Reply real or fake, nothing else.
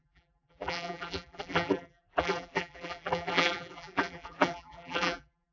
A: fake